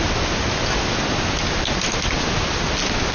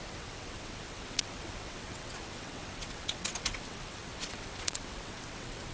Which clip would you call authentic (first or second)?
first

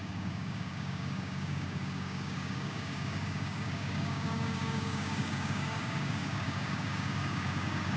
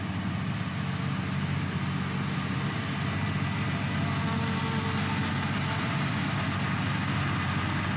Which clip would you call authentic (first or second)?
second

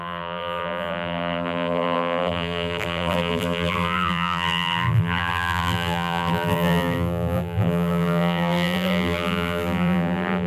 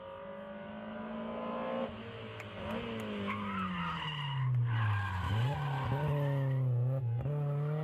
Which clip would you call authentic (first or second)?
second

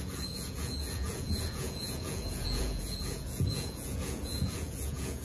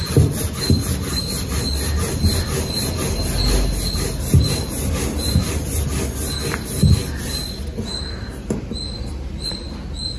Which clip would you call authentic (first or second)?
second